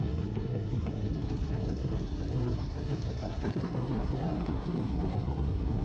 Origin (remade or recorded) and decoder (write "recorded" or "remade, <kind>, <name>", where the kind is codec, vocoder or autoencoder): remade, codec, SNAC